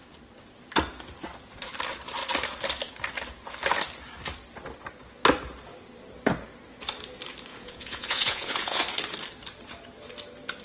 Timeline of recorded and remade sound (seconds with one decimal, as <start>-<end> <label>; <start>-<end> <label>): 0.0-7.5 recorded; 7.5-8.8 remade; 8.8-10.6 recorded